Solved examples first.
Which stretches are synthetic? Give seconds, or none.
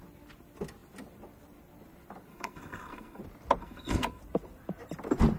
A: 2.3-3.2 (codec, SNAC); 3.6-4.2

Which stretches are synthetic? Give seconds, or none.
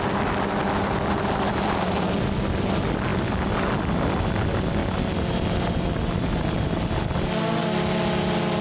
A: none